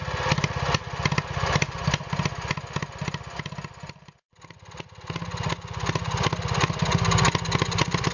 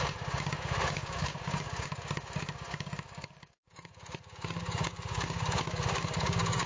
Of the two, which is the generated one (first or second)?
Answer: second